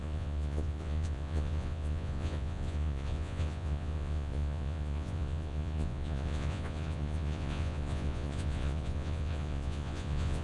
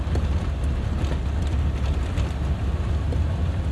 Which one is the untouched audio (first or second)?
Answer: second